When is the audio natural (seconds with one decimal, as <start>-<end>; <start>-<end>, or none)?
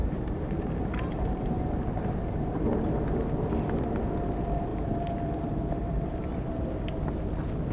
1.6-4.7; 6.2-7.7